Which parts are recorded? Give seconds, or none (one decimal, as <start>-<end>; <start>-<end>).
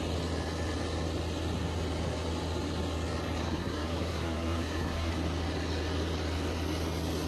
0.0-3.4; 5.1-7.3